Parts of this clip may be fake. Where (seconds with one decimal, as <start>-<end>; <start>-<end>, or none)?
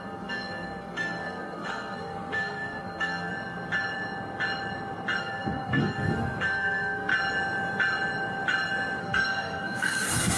0.0-3.3; 5.2-7.1; 9.0-10.4